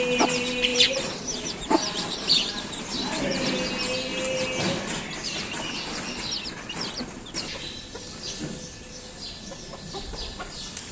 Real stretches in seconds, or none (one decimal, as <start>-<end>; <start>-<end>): 0.0-0.7; 3.2-10.9